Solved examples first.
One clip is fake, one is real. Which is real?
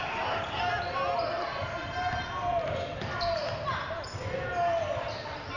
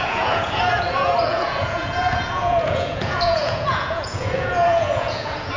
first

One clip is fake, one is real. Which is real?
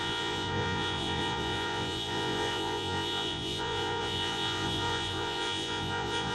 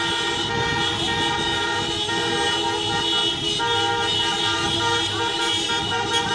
second